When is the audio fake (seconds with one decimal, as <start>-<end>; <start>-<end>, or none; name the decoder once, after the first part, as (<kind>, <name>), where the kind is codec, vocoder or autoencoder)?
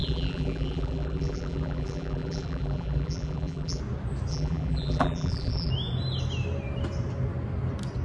0.0-3.8 (vocoder, BigVGAN v2); 4.3-5.7